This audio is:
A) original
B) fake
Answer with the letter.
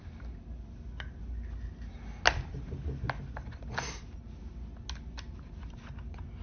A